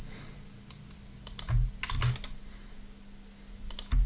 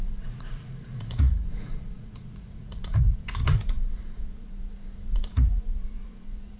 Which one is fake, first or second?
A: second